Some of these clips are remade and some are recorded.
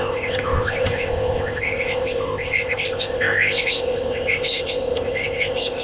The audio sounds remade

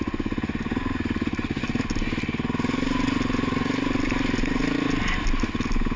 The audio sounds recorded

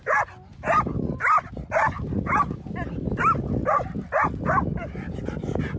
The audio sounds recorded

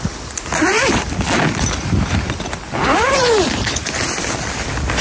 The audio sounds recorded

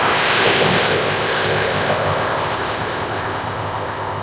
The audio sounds remade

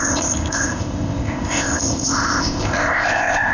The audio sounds remade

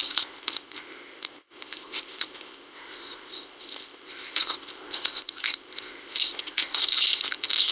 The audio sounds remade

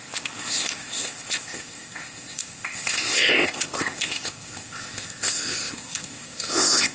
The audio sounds remade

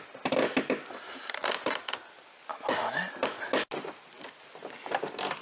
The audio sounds recorded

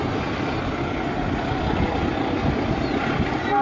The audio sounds recorded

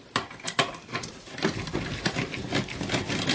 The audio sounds recorded